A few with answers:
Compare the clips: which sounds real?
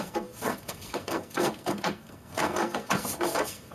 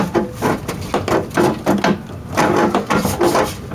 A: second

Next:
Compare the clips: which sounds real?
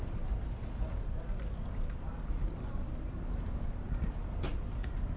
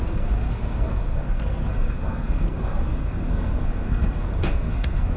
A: first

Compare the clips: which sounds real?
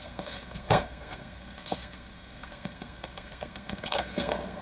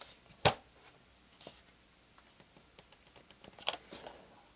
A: second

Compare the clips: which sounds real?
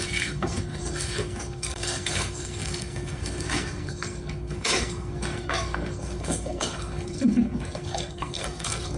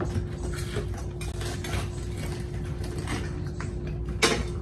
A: second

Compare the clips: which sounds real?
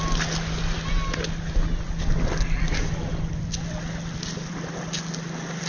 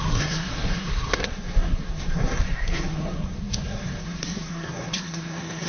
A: first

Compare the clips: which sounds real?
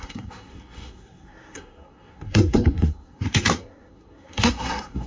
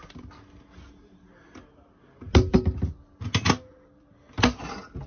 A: second